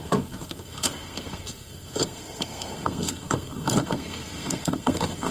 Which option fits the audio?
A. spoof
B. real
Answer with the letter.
A